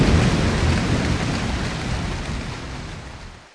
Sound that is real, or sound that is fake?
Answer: real